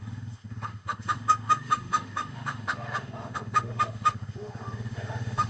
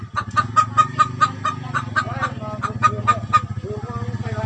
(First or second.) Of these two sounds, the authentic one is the second